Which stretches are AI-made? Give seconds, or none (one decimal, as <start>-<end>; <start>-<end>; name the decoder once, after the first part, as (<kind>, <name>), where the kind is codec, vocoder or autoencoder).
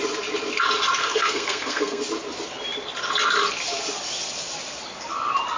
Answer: 1.0-2.0 (codec, SNAC)